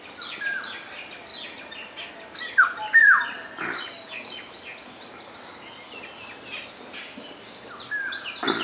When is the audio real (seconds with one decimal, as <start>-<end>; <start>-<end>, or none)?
0.0-8.6